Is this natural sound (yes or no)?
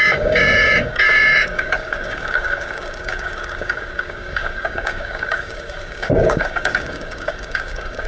no